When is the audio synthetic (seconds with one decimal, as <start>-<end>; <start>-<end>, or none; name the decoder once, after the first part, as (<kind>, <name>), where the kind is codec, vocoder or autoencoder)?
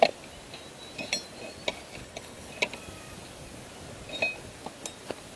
2.0-2.5 (codec, HILCodec)